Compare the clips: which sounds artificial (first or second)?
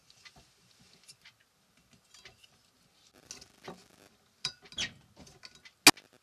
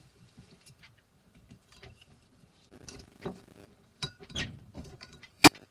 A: second